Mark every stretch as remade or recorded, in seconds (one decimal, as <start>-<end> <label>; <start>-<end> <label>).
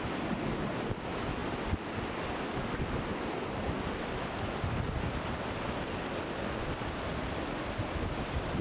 0.0-8.6 recorded